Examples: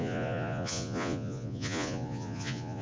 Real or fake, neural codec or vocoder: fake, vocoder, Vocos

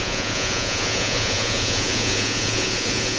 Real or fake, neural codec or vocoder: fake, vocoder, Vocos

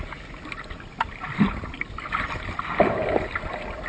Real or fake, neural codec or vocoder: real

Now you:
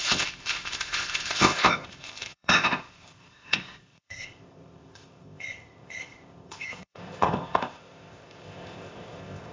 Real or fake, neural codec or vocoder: fake, codec, ZipCodec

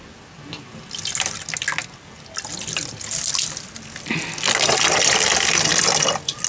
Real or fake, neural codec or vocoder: real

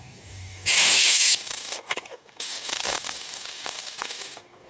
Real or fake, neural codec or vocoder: fake, codec, DAC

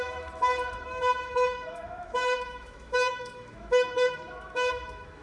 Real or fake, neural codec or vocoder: fake, autoencoder, DAC-VAE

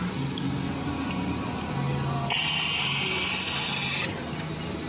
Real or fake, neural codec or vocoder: real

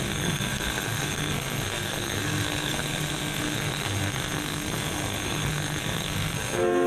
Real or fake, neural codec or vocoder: fake, codec, SNAC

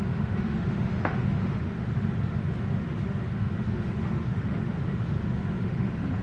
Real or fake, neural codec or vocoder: fake, autoencoder, DAC-VAE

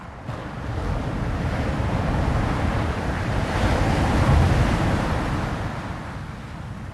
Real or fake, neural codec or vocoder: real